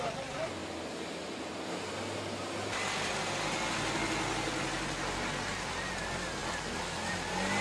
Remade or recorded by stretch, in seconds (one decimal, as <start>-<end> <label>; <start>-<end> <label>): 0.0-0.6 recorded; 0.6-1.8 remade; 1.8-7.6 recorded